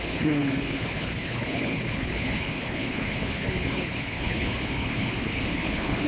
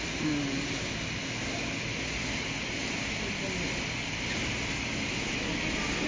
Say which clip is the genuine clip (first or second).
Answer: second